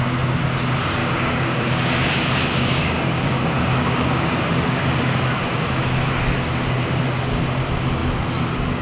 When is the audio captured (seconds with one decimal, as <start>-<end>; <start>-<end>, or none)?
0.0-1.0; 5.8-8.8